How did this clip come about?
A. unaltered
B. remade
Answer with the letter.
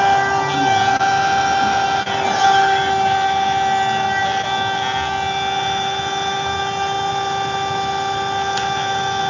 A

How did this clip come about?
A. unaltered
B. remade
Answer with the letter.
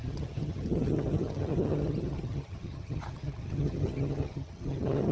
B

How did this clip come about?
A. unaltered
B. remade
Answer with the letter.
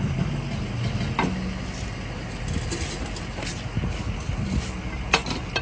A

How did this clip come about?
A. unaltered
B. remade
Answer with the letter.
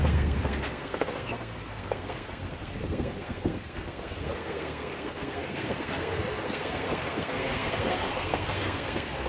B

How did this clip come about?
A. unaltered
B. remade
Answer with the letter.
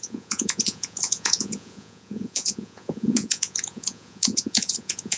B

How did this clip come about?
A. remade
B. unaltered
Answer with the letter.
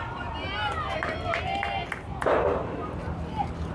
B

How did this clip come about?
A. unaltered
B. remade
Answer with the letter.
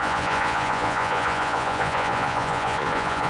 B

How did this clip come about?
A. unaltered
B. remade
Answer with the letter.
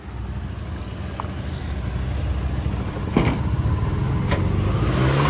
A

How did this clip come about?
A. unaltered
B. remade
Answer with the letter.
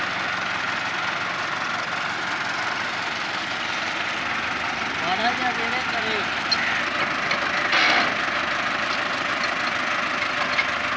A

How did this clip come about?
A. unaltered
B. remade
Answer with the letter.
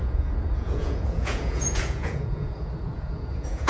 B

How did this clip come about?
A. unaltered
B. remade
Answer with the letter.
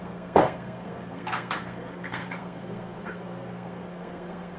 B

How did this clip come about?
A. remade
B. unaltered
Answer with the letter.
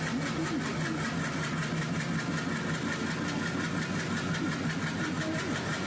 B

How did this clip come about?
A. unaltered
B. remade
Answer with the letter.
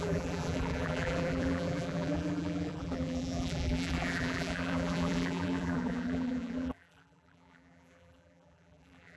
B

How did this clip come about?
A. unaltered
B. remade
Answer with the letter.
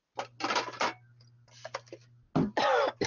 A